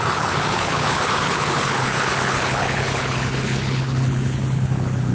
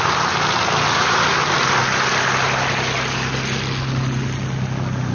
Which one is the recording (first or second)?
second